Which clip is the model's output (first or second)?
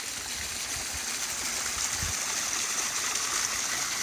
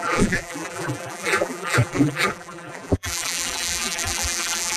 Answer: second